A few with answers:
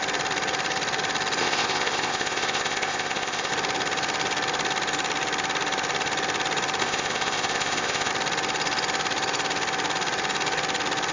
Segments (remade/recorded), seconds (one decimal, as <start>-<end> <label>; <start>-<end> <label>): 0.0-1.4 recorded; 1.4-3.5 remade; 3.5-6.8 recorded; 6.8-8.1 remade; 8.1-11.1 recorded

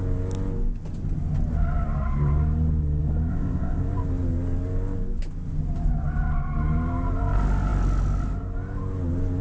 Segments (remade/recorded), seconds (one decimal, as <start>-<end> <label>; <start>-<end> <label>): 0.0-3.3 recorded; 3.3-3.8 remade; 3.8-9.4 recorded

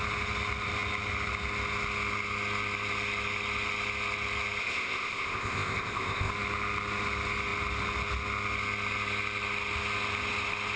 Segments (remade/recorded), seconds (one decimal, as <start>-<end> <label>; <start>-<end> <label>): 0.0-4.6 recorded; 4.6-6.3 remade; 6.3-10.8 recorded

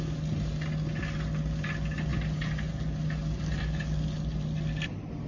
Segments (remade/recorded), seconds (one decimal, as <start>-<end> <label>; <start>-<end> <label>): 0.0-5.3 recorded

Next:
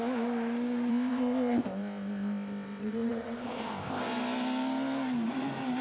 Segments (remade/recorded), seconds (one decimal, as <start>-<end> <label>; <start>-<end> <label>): 0.0-0.9 recorded; 0.9-4.0 remade; 4.0-5.8 recorded

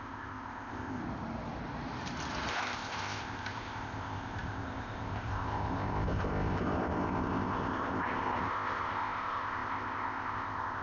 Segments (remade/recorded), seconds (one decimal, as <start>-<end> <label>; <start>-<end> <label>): 0.0-1.0 remade; 1.0-2.5 recorded; 2.5-10.8 remade

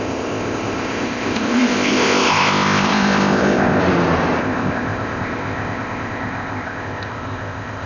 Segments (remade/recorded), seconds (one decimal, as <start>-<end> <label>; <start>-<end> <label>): 0.0-3.8 remade; 3.8-4.4 recorded; 4.4-7.9 remade